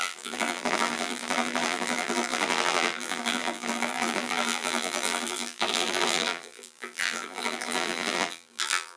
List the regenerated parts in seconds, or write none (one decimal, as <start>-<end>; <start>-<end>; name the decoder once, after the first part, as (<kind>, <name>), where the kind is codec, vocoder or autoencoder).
0.0-9.0 (vocoder, BigVGAN v2)